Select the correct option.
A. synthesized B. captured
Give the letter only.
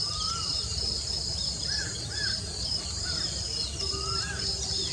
B